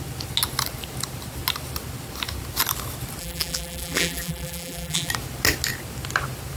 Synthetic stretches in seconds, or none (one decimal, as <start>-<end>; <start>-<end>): 3.2-5.1